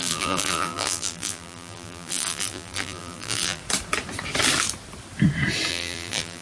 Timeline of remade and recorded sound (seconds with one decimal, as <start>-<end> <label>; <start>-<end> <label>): 0.0-3.6 remade; 3.6-5.7 recorded; 5.7-6.4 remade